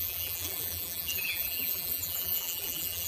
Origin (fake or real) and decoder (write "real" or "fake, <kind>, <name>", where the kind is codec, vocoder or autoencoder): fake, vocoder, BigVGAN v2